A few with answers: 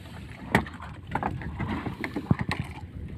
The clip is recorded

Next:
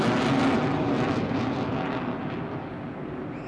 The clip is recorded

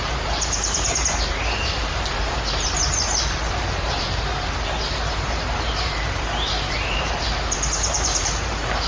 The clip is remade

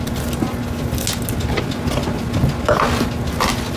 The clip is recorded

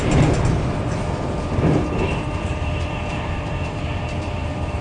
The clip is remade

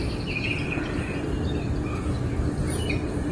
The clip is recorded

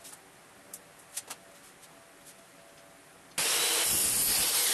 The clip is recorded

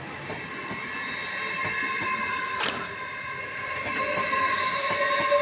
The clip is recorded